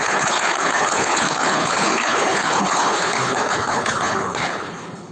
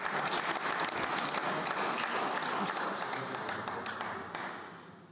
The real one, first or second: second